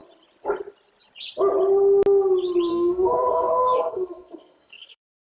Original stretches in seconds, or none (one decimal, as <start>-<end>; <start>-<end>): 0.0-2.7